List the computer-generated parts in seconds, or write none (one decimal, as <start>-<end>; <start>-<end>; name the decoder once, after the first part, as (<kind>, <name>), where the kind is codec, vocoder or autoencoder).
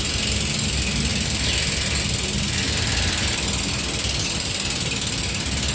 none